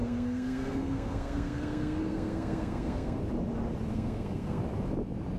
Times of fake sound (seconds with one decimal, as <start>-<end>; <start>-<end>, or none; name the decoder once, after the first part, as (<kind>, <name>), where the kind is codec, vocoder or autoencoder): 0.0-3.2 (codec, SNAC); 3.9-4.6